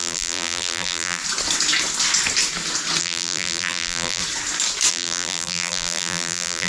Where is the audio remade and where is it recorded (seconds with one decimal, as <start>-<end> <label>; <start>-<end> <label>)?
0.0-1.2 remade; 1.2-3.0 recorded; 3.0-4.2 remade; 4.2-4.9 recorded; 4.9-6.7 remade